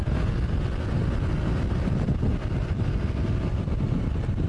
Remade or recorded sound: recorded